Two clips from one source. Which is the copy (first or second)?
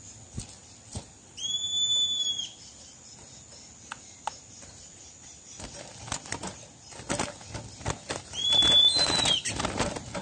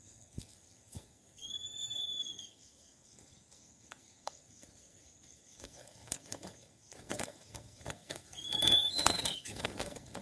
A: second